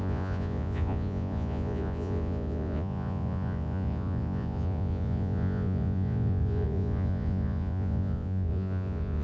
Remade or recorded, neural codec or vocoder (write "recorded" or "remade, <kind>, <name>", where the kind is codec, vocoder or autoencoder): remade, vocoder, Vocos